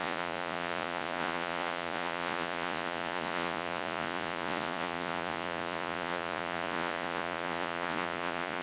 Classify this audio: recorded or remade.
remade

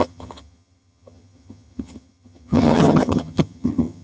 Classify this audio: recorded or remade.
remade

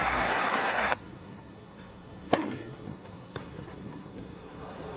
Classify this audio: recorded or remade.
remade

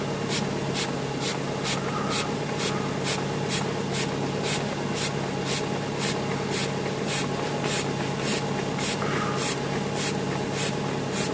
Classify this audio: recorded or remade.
recorded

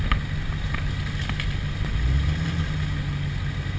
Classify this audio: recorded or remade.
recorded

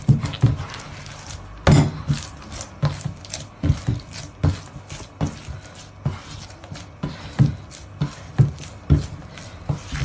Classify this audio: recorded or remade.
recorded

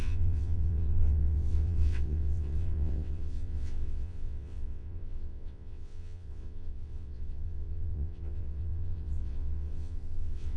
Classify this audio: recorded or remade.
remade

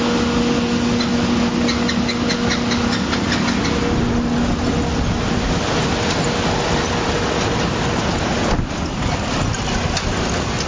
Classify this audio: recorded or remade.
recorded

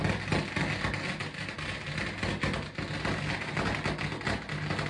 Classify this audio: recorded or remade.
recorded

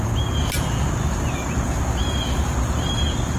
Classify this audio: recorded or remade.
recorded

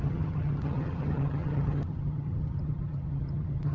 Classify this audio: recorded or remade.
remade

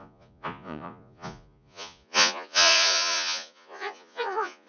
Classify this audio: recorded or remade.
remade